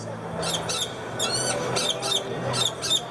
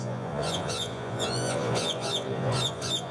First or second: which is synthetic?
second